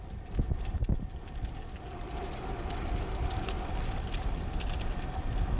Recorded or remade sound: recorded